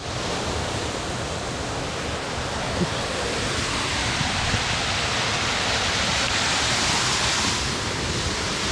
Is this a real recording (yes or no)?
yes